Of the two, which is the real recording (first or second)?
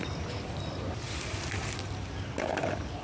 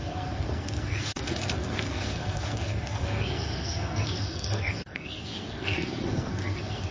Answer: first